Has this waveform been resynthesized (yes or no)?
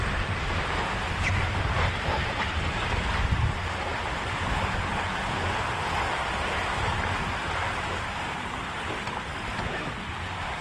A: no